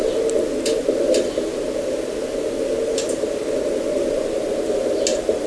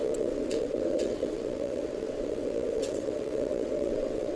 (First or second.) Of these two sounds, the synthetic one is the second